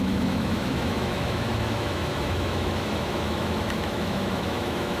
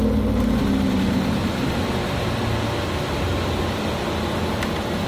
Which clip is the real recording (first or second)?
second